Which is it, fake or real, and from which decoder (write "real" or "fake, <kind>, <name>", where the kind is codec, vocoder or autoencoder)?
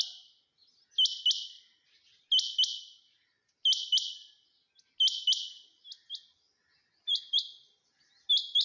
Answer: real